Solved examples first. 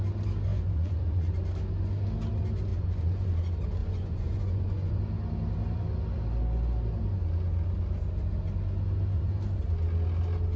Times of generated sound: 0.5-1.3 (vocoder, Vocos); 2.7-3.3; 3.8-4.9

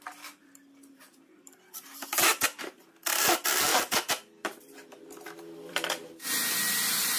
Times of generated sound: 3.7-6.5 (vocoder, BigVGAN v2)